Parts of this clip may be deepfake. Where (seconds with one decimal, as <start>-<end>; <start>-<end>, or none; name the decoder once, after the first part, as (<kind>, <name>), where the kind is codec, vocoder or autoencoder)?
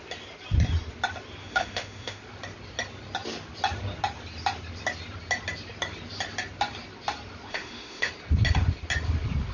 1.4-2.2 (autoencoder, DAC-VAE); 7.5-8.1